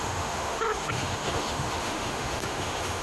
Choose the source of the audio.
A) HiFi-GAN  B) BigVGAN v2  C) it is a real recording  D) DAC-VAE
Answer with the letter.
D